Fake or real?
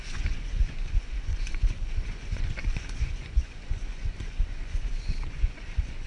fake